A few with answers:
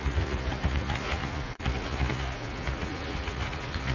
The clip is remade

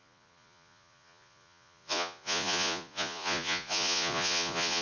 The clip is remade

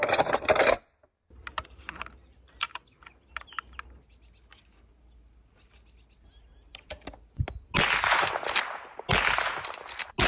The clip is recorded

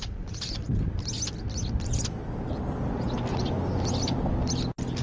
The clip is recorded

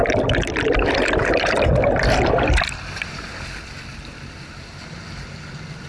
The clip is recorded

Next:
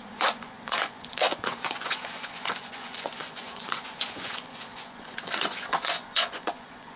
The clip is remade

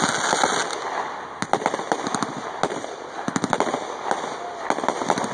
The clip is recorded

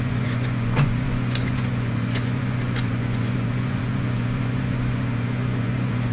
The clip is remade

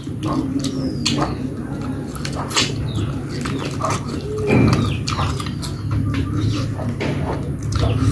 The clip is recorded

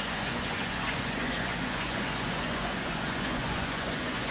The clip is remade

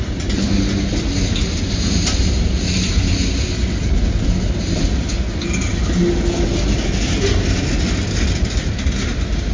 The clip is recorded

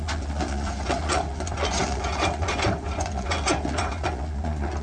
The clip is remade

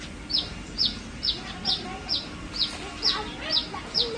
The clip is recorded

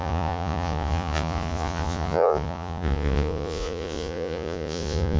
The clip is remade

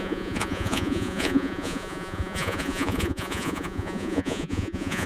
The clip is remade